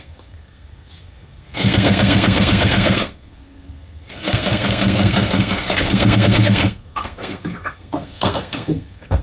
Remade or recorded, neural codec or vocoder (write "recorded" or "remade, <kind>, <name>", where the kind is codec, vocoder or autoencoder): remade, codec, SNAC